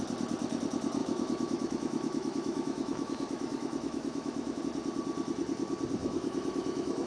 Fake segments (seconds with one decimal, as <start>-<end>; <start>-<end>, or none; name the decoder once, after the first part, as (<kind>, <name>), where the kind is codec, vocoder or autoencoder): 1.0-4.6 (autoencoder, DAC-VAE); 6.0-7.1